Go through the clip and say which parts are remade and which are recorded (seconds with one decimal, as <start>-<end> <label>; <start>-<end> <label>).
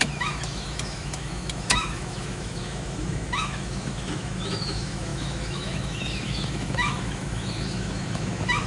0.0-8.7 remade